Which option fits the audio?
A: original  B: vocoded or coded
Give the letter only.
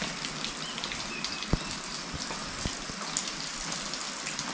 A